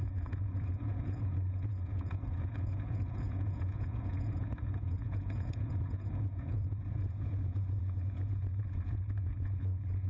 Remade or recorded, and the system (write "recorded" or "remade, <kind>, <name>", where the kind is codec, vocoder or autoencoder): remade, vocoder, Vocos